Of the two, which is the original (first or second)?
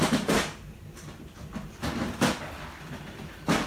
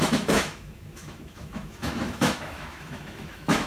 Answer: first